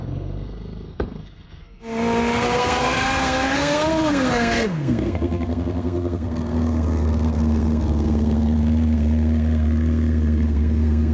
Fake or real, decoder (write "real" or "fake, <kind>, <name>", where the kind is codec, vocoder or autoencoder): fake, codec, SNAC